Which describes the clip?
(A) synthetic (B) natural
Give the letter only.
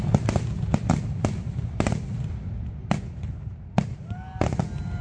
B